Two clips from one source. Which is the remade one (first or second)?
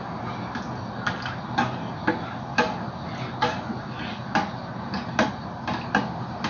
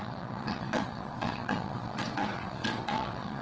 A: second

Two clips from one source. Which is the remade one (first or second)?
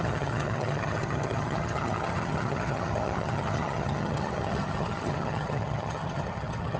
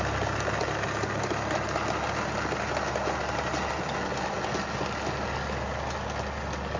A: first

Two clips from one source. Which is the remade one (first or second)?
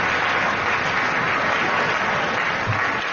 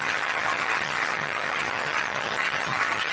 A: second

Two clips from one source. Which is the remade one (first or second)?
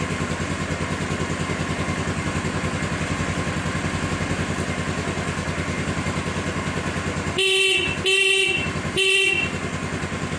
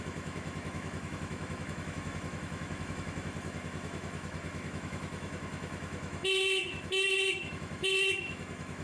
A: second